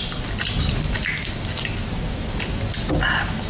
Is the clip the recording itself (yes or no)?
yes